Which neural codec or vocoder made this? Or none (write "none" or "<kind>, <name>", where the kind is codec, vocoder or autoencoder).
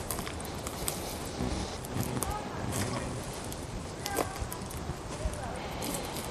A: none